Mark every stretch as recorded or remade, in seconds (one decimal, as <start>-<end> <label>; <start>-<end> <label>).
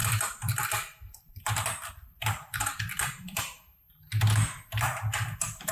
0.0-3.4 remade; 3.4-5.7 recorded